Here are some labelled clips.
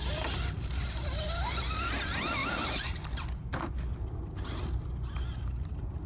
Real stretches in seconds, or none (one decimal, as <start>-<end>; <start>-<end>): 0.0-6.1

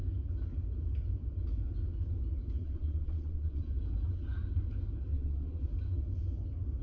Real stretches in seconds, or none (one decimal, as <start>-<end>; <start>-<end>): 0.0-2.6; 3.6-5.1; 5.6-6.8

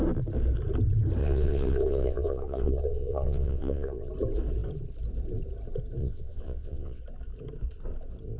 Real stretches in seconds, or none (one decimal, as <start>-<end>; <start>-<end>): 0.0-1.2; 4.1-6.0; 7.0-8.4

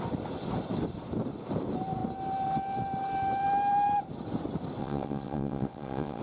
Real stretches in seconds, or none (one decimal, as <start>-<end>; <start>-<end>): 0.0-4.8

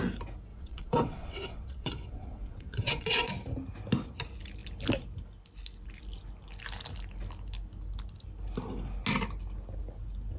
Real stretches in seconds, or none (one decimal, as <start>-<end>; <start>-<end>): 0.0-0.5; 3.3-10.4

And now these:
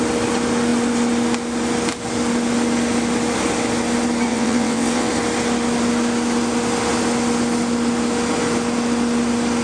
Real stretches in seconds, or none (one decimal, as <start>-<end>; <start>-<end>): 0.0-4.3; 5.1-9.6